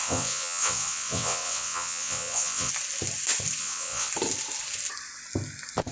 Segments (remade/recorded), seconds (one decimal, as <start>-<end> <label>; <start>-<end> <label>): 0.0-2.7 remade; 2.7-3.6 recorded; 3.6-4.1 remade; 4.1-5.9 recorded